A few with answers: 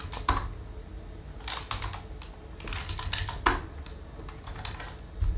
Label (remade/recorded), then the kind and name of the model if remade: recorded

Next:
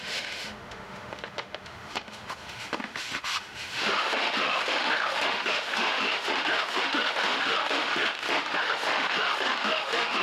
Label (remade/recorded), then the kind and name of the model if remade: remade, autoencoder, DAC-VAE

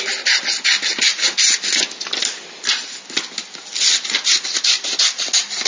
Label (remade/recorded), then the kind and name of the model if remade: recorded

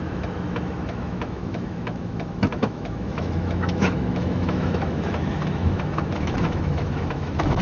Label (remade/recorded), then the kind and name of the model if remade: remade, autoencoder, DAC-VAE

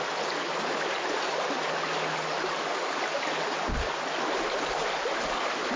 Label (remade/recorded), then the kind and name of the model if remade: recorded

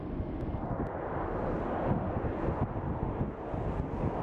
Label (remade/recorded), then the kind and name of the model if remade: recorded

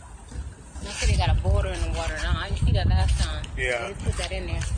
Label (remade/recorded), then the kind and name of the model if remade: recorded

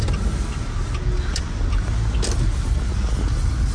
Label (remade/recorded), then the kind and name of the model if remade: recorded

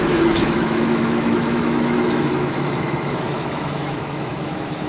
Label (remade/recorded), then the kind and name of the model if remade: remade, autoencoder, DAC-VAE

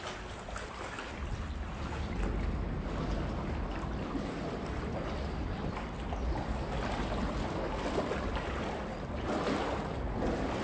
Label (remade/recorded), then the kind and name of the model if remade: recorded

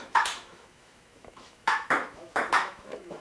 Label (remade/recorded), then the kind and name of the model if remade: remade, autoencoder, DAC-VAE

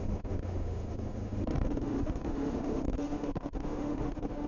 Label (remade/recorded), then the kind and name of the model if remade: remade, autoencoder, DAC-VAE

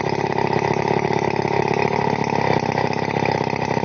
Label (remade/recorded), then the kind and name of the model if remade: recorded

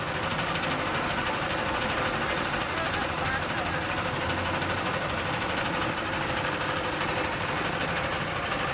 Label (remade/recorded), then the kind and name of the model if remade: recorded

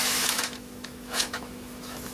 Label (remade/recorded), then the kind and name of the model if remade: remade, autoencoder, DAC-VAE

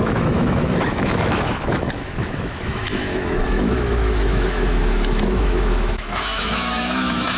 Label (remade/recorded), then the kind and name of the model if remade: remade, autoencoder, DAC-VAE